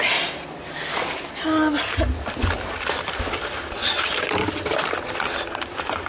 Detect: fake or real real